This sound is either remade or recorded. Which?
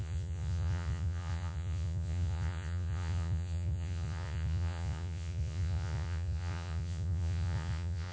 remade